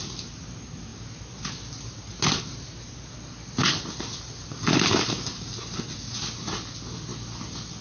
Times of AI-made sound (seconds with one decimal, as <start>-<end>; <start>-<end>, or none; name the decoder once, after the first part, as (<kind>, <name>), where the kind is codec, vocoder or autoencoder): none